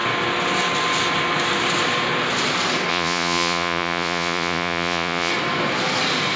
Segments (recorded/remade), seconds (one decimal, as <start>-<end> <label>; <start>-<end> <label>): 0.0-2.9 recorded; 2.9-5.3 remade; 5.3-6.4 recorded